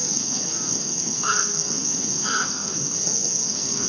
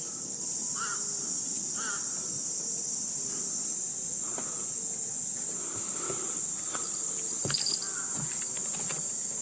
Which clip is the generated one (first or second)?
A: first